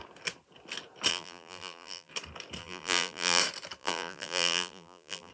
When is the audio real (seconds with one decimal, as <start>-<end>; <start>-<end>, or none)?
0.0-1.1; 2.1-2.6; 3.4-3.8